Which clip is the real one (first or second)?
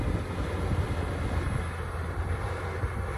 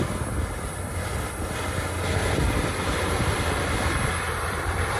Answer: first